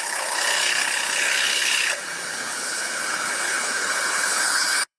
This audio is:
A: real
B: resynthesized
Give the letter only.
B